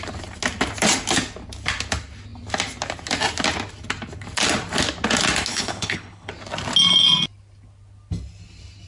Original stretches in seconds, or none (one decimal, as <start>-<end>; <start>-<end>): 0.0-5.5; 6.3-8.9